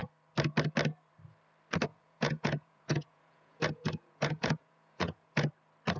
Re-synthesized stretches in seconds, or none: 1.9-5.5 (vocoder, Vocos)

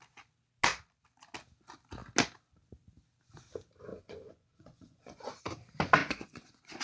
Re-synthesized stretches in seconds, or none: 3.9-5.4 (vocoder, Vocos); 6.0-6.8

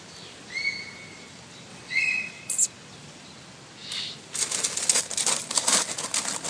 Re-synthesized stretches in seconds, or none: 1.7-2.3 (vocoder, WaveNeXt)

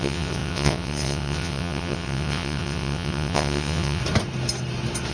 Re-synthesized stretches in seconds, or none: 0.0-4.0 (vocoder, WaveNeXt)

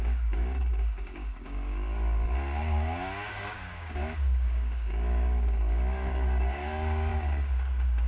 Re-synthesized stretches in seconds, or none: 0.0-8.1 (codec, DAC)

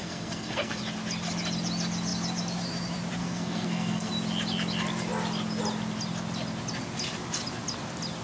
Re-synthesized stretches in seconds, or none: 0.0-0.8 (codec, SNAC); 3.2-4.1

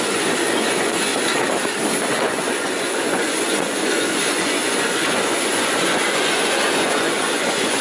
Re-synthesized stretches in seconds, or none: 0.0-1.1 (vocoder, Vocos); 2.0-7.8

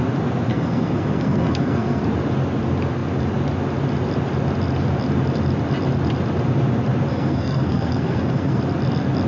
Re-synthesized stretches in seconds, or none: 0.5-2.0 (codec, SNAC); 7.1-8.6